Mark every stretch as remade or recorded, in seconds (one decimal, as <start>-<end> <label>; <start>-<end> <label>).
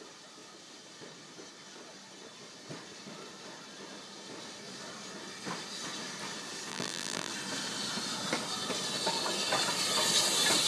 0.0-6.7 recorded; 6.7-7.3 remade; 7.3-10.7 recorded